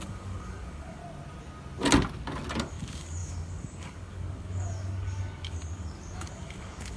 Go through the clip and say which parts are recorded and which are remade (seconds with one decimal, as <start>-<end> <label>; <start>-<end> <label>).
0.0-1.0 remade; 1.0-2.6 recorded; 2.6-7.0 remade